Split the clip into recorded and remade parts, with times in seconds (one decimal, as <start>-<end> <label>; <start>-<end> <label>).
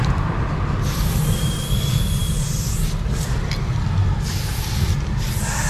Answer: 0.0-5.7 recorded